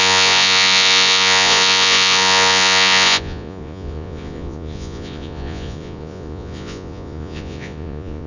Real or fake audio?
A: fake